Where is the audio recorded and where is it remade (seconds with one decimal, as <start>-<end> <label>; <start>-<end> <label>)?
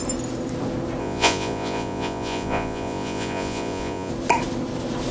0.0-1.0 recorded; 1.0-4.1 remade; 4.1-5.1 recorded